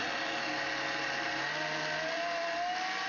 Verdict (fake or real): real